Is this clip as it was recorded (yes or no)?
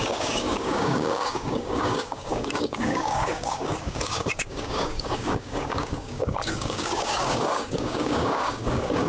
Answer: no